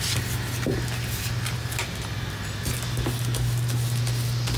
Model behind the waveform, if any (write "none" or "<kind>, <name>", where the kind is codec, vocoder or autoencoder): none